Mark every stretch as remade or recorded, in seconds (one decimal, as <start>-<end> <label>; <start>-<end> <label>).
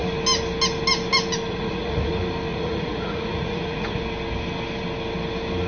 0.0-1.5 recorded; 1.5-2.1 remade; 2.1-2.5 recorded; 2.5-4.0 remade; 4.0-5.7 recorded